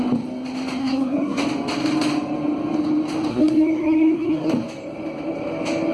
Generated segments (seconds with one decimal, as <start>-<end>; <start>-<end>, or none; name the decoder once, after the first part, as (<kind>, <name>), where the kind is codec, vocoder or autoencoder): 0.8-1.4 (codec, SNAC); 3.3-4.5